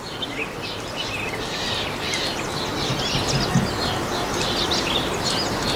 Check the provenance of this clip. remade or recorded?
recorded